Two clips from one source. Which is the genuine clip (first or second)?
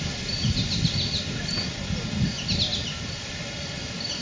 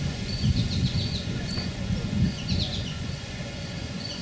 first